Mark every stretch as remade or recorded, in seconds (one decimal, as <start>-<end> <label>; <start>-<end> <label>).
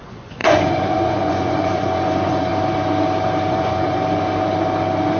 0.0-2.5 remade; 2.5-3.5 recorded; 3.5-4.0 remade; 4.0-5.2 recorded